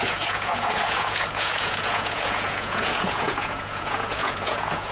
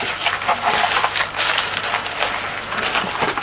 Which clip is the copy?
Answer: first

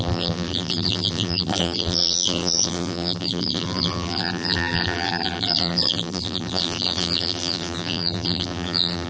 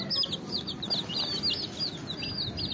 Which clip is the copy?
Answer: first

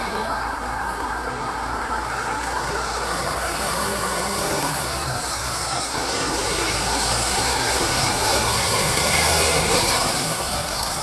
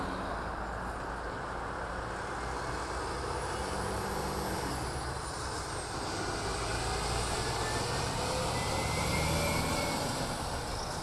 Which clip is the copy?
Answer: first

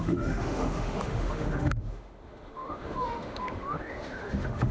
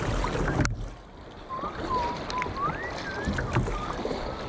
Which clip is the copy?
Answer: first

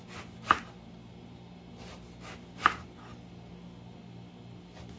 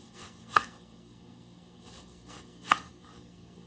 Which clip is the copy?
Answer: second